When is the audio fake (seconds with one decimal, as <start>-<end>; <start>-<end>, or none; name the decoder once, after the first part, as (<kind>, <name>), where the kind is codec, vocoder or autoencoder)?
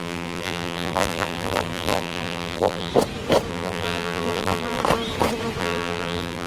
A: 0.0-2.9 (vocoder, BigVGAN v2); 3.5-4.8; 5.6-6.5